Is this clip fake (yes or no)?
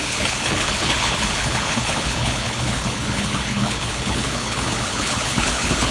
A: yes